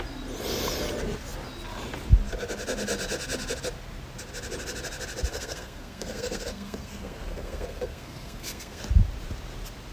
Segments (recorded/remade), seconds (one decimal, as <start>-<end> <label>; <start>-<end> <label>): 0.0-5.3 recorded; 5.3-8.8 remade; 8.8-9.9 recorded